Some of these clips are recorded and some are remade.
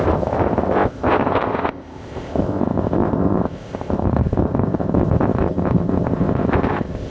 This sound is remade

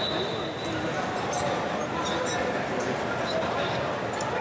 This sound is recorded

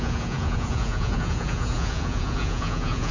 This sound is remade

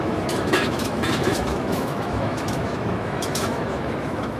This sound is remade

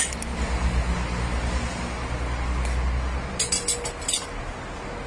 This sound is recorded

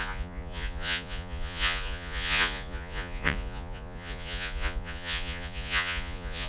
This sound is remade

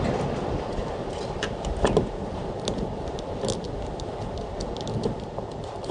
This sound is recorded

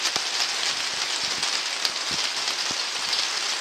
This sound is recorded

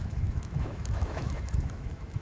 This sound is remade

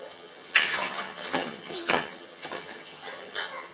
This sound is remade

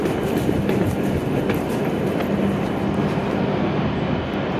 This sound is recorded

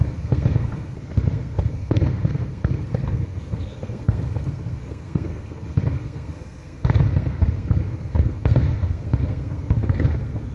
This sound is remade